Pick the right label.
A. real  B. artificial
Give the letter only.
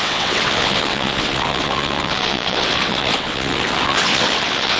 B